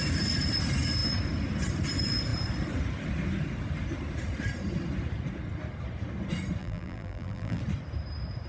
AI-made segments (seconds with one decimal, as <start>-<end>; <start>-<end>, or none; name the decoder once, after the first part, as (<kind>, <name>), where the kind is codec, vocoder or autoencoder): 6.6-7.6 (vocoder, BigVGAN v2)